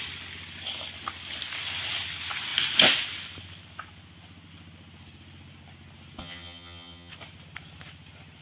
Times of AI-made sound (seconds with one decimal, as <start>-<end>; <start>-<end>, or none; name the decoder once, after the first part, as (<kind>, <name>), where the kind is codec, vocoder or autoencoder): 6.2-7.1 (vocoder, HiFi-GAN)